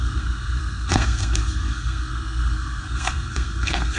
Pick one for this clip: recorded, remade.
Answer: remade